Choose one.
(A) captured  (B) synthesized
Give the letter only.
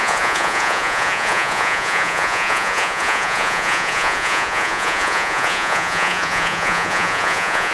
B